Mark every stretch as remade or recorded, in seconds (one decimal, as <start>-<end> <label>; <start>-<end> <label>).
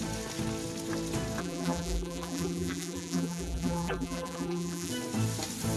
0.0-1.4 recorded; 1.4-4.9 remade; 4.9-5.8 recorded